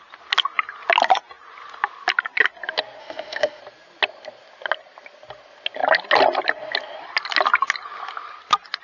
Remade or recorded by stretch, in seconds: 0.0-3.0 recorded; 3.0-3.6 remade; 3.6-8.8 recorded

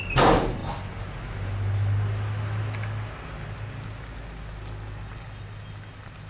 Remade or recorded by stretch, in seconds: 0.0-6.3 recorded

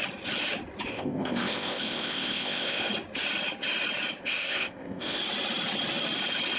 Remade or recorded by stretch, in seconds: 0.0-0.9 recorded; 0.9-2.9 remade; 2.9-4.2 recorded; 4.2-5.2 remade; 5.2-6.6 recorded

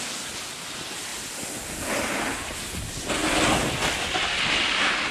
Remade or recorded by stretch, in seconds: 0.0-5.1 recorded